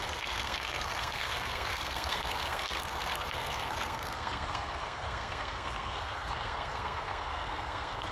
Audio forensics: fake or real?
fake